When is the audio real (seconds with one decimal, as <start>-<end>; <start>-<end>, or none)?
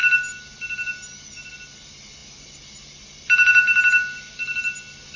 0.0-5.2